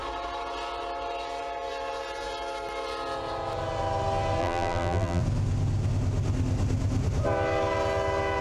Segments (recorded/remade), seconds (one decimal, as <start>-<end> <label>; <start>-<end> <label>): 0.0-4.4 recorded; 4.4-5.2 remade; 5.2-8.4 recorded